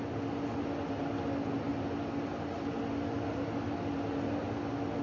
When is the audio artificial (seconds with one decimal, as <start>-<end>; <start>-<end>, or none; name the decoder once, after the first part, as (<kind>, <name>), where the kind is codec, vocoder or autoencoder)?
none